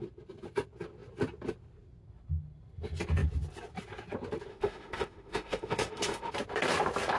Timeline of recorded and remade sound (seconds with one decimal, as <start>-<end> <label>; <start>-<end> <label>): 0.0-4.5 recorded; 4.5-6.3 remade; 6.3-7.2 recorded